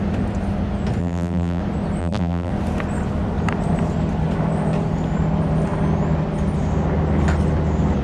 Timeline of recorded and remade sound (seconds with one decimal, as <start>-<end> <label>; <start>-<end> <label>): 0.0-1.0 recorded; 1.0-1.6 remade; 1.6-2.0 recorded; 2.0-2.5 remade; 2.5-8.0 recorded